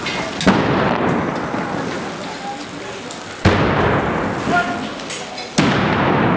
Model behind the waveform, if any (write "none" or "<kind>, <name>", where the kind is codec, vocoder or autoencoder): none